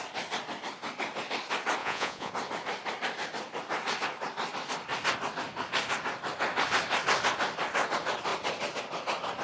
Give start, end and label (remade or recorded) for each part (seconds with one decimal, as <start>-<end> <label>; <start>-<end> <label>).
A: 0.0-1.8 recorded; 1.8-2.3 remade; 2.3-9.4 recorded

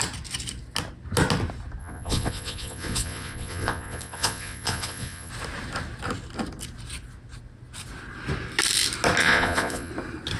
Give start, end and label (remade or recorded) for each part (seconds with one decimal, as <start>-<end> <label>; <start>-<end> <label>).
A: 0.0-1.8 recorded; 1.8-5.3 remade; 5.3-9.2 recorded; 9.2-9.9 remade; 9.9-10.4 recorded

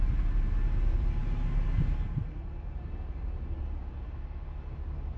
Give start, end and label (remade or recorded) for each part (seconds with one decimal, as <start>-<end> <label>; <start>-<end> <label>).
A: 0.0-5.2 recorded

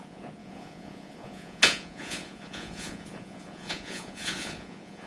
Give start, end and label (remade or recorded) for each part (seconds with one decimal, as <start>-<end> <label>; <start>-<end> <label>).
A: 0.0-5.1 remade